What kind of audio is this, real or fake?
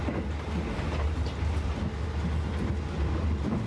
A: real